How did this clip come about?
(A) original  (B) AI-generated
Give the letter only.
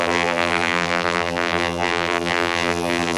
B